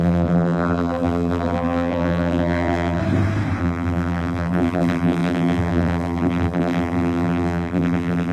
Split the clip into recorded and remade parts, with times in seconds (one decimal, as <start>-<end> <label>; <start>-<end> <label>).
0.0-3.0 remade; 3.0-3.6 recorded; 3.6-8.3 remade

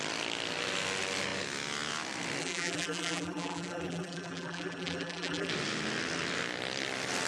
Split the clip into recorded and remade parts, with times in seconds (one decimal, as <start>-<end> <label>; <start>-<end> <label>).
0.0-2.4 recorded; 2.4-5.5 remade; 5.5-7.3 recorded

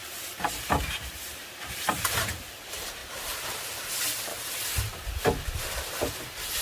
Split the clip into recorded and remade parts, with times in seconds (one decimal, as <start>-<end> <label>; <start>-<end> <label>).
0.0-2.3 remade; 2.3-3.0 recorded; 3.0-3.9 remade; 3.9-6.6 recorded

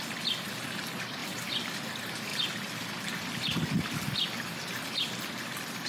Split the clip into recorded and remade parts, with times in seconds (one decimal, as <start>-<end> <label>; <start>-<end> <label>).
0.0-1.2 recorded; 1.2-1.9 remade; 1.9-5.9 recorded

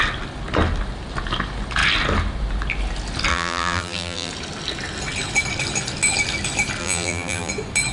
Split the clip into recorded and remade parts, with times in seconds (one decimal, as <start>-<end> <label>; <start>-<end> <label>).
0.0-3.3 recorded; 3.3-4.3 remade; 4.3-6.8 recorded; 6.8-7.5 remade; 7.5-7.9 recorded

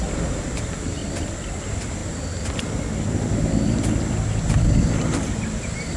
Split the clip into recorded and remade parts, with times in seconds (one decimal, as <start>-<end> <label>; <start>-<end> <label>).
0.0-1.0 remade; 1.0-1.6 recorded; 1.6-2.0 remade; 2.0-5.6 recorded; 5.6-6.0 remade

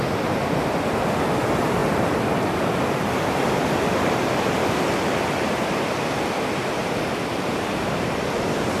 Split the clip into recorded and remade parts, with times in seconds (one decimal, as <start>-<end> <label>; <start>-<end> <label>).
0.0-6.8 recorded; 6.8-8.2 remade; 8.2-8.8 recorded